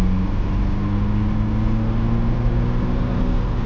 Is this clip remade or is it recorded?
recorded